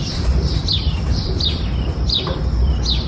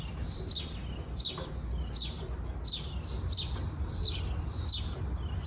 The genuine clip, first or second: second